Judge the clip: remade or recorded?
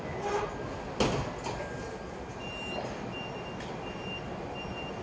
recorded